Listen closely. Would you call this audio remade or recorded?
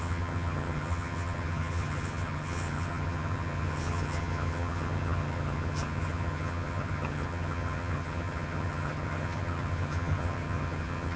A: remade